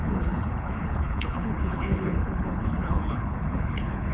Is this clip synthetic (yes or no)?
yes